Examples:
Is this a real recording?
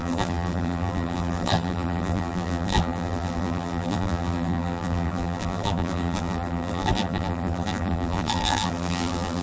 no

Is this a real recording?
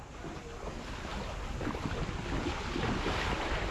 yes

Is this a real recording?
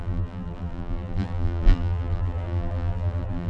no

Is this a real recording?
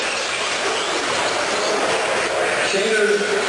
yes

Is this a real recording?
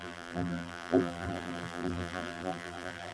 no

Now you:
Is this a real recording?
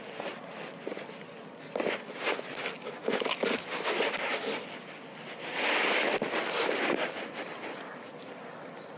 yes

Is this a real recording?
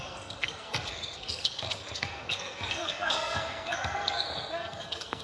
no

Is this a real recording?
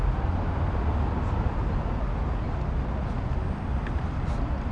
yes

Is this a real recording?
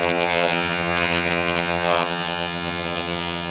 no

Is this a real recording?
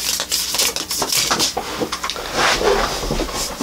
yes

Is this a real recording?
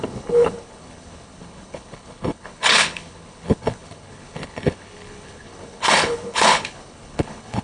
no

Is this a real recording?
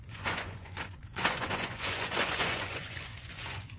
no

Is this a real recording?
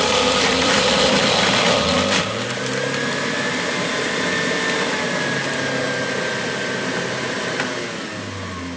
no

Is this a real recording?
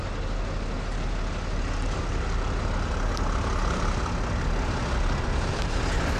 yes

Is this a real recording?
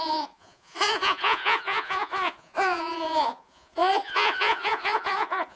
no